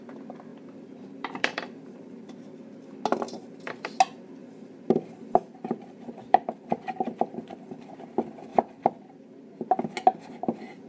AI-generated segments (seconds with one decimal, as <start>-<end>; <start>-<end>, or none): 0.5-2.3; 4.4-7.2; 8.5-9.4